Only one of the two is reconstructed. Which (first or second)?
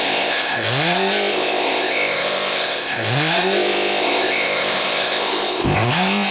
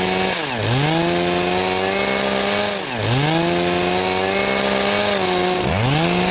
first